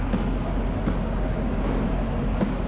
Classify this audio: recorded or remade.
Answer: recorded